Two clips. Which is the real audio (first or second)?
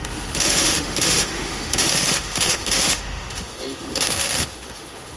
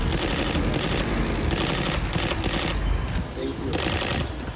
second